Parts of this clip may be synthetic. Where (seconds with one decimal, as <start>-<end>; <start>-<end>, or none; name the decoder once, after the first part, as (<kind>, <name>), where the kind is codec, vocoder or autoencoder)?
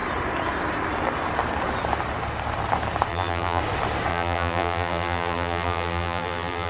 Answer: 3.1-3.6 (vocoder, BigVGAN v2); 4.1-6.7